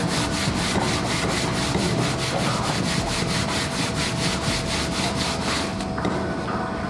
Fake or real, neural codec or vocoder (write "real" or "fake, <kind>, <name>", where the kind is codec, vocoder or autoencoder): real